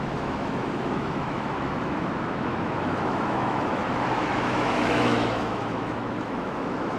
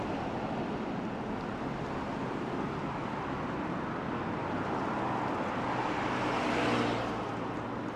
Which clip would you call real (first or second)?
second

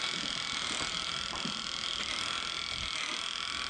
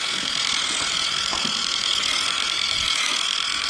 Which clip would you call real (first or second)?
first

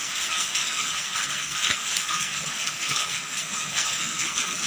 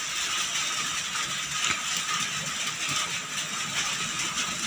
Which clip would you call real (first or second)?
second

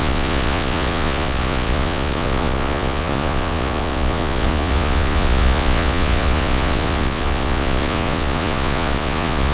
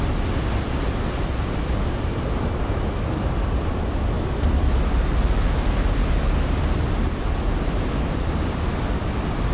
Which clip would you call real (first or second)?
second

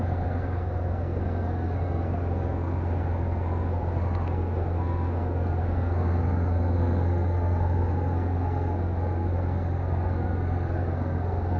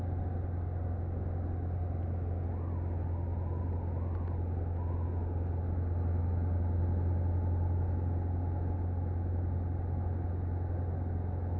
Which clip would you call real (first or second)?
second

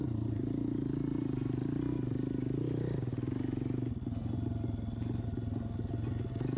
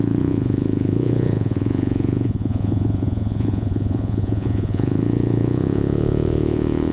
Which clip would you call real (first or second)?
first